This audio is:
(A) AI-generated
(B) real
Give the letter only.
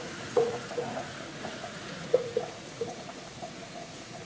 A